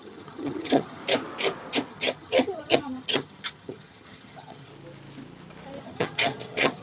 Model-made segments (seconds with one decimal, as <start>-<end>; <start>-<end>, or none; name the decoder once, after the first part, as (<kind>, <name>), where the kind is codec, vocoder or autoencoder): 0.0-1.0 (vocoder, HiFi-GAN); 1.9-4.7; 5.8-6.8